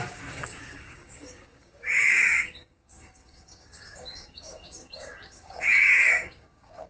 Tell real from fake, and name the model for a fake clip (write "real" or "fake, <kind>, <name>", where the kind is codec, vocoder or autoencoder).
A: fake, codec, DAC